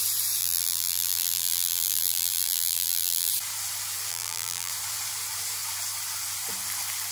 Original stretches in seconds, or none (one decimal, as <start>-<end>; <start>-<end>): 0.0-0.4; 3.3-4.1; 4.7-7.1